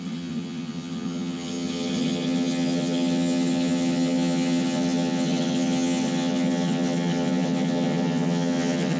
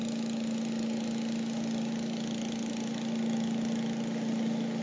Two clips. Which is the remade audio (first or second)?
first